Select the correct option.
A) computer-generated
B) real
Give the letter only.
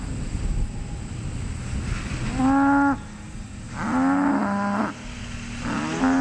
B